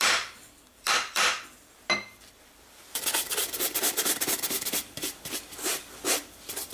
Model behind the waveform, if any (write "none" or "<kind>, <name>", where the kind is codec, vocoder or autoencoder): vocoder, BigVGAN v2